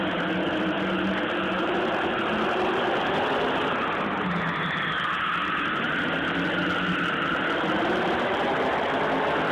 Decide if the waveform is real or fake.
real